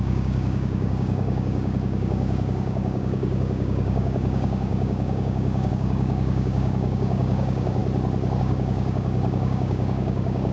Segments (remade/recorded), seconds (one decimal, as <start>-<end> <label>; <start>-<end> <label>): 0.0-7.8 remade; 7.8-8.4 recorded; 8.4-10.5 remade